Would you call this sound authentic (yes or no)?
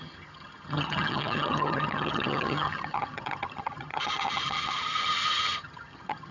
no